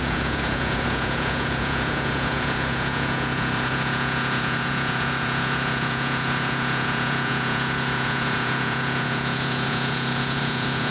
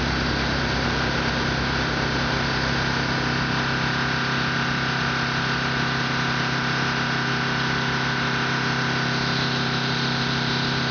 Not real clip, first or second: first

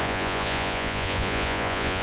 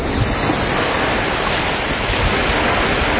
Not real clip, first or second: first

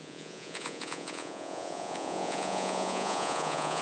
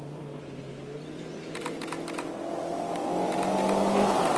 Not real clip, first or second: first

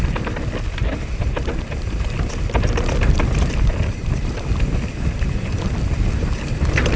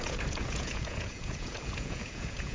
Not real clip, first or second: second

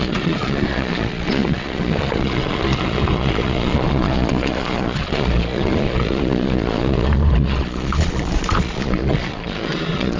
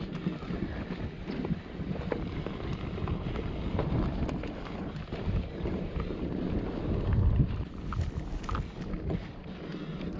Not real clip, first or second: first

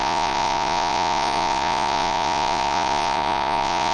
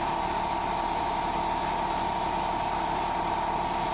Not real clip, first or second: first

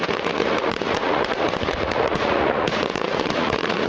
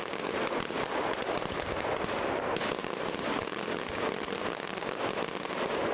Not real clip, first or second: first